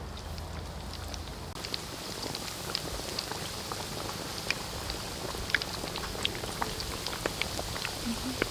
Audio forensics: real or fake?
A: real